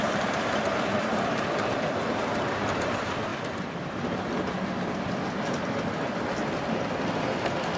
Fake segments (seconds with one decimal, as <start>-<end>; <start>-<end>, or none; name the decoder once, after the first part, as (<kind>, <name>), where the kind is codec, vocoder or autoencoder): 0.0-1.7 (vocoder, BigVGAN v2); 2.8-3.3